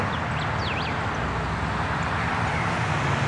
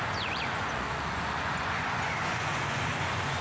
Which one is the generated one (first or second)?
second